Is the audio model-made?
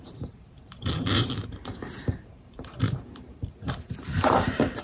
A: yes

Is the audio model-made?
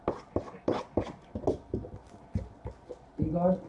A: no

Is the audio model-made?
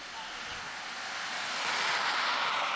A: no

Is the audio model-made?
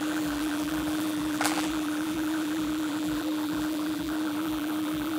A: yes